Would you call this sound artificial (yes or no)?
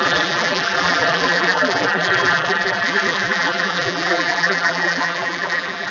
yes